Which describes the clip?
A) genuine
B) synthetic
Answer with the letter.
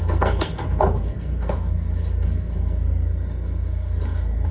B